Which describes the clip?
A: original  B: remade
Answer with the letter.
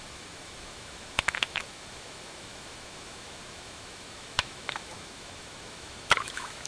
B